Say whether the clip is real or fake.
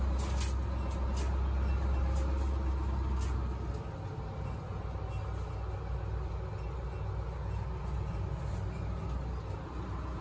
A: real